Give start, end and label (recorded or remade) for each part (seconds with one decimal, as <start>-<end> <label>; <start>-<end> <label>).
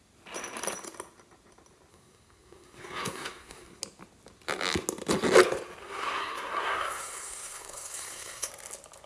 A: 0.0-1.9 recorded; 1.9-3.8 remade; 3.8-5.8 recorded; 5.8-8.5 remade; 8.5-9.1 recorded